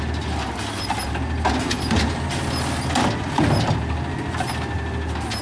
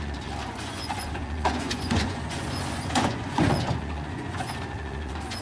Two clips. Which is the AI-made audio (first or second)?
second